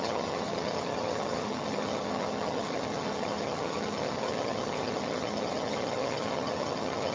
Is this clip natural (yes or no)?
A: no